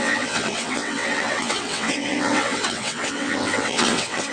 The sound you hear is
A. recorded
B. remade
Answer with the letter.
B